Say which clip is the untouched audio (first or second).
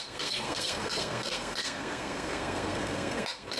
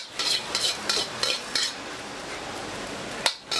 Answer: second